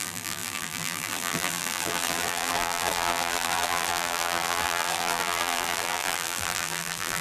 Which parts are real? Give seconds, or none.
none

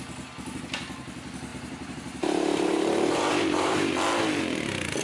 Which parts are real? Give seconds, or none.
0.0-1.5; 3.9-5.0

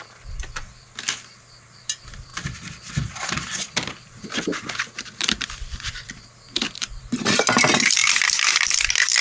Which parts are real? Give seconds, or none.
2.3-2.9

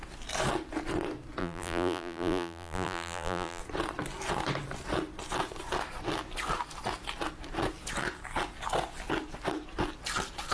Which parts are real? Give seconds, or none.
0.0-1.4; 3.6-10.5

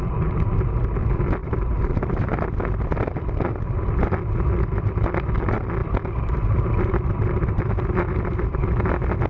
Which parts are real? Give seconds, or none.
0.0-1.4; 2.4-5.8; 8.9-9.3

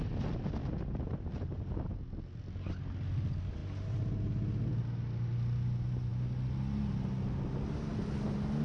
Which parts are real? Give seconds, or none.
0.0-0.6; 1.1-8.6

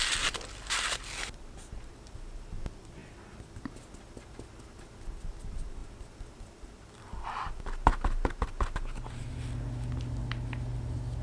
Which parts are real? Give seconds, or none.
0.0-11.2

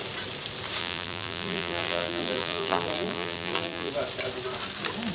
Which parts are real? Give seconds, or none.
0.0-0.8; 3.9-5.1